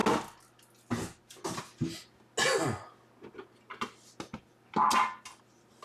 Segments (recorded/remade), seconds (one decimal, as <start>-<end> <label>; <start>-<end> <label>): 0.0-5.8 recorded